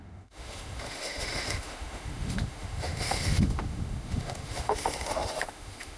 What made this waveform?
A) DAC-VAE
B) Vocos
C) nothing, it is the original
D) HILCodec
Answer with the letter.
A